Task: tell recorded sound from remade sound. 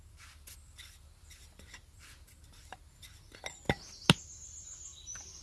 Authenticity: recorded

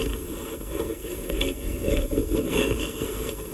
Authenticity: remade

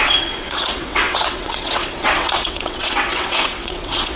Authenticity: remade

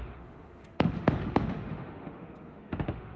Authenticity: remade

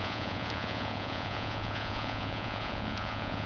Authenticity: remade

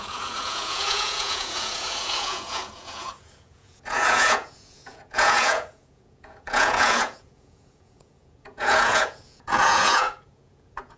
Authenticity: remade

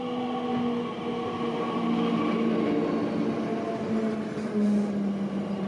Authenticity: recorded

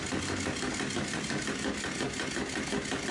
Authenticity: recorded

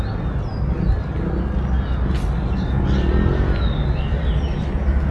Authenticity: recorded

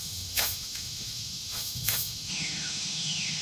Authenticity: remade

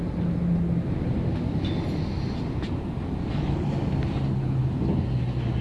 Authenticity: recorded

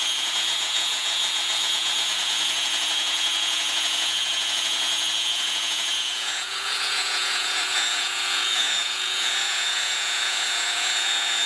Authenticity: remade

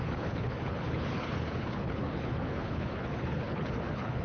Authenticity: remade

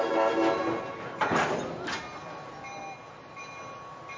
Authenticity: recorded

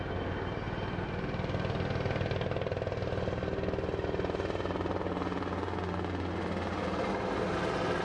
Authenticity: recorded